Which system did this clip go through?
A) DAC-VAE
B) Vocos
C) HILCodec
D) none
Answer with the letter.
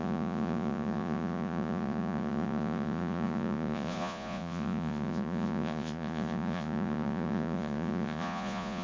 B